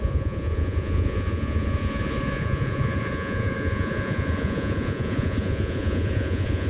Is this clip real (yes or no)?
no